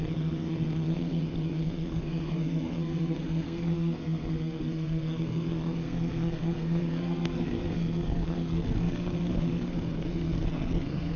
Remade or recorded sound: remade